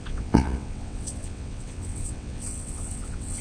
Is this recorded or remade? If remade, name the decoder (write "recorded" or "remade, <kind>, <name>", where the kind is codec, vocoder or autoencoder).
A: remade, vocoder, WaveNeXt